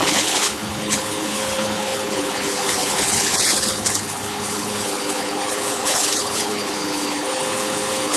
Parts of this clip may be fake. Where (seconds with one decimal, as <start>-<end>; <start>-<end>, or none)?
0.0-8.2